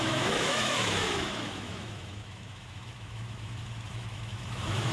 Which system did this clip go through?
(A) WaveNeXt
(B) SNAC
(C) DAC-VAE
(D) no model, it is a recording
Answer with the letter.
C